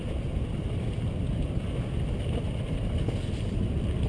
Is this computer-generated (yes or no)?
no